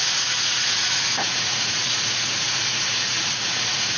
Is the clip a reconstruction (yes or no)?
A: yes